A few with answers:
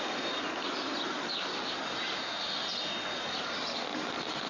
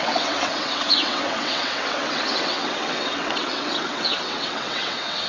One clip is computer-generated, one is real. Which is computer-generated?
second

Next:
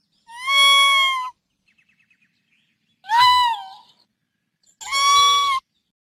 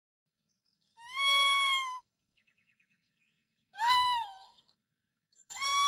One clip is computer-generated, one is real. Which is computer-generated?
second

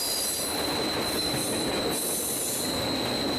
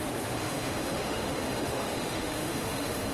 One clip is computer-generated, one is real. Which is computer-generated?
second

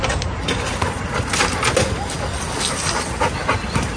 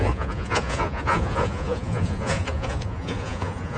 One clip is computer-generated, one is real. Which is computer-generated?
second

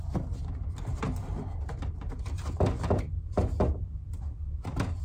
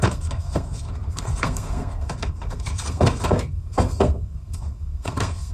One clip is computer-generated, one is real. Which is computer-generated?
second